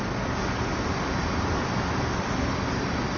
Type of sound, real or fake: real